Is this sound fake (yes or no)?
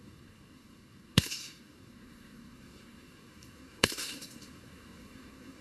yes